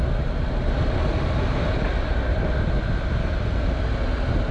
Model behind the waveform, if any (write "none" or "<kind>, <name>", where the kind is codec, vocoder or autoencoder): none